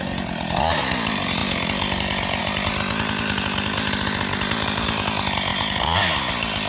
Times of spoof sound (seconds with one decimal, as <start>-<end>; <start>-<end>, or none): none